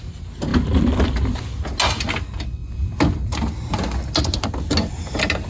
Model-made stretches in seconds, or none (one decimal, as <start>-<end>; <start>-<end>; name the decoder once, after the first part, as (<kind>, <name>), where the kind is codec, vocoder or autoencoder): none